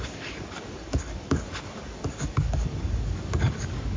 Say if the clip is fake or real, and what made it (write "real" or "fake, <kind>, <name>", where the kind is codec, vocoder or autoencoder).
fake, codec, DAC